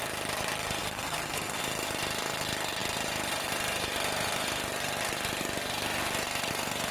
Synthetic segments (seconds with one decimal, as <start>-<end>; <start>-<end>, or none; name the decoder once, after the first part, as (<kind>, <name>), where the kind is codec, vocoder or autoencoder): 0.8-1.6 (codec, SNAC)